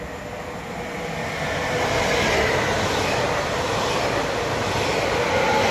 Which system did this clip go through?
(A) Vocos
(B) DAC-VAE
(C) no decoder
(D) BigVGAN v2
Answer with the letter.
C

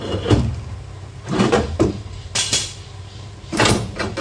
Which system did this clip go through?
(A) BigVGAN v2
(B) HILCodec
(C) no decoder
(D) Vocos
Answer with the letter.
A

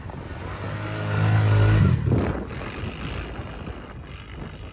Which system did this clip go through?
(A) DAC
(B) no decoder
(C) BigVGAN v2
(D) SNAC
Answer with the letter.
B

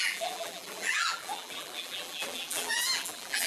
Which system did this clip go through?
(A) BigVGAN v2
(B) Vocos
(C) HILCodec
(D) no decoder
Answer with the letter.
A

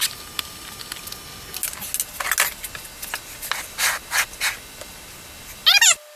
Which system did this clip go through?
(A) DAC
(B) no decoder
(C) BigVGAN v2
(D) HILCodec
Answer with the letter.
B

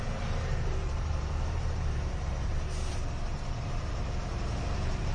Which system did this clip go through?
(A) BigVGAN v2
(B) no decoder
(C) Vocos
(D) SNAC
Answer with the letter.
A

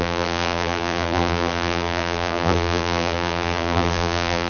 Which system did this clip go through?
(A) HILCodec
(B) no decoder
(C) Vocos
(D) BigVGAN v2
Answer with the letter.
D